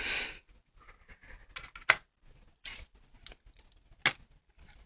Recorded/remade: recorded